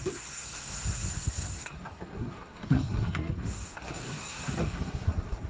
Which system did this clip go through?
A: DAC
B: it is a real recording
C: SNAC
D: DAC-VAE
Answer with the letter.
C